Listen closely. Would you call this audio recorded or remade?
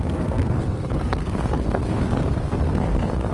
remade